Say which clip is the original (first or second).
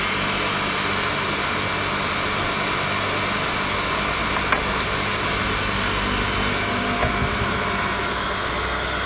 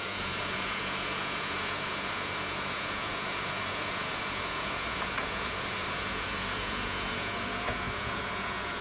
first